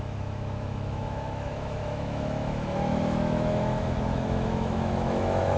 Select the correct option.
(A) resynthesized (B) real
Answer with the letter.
A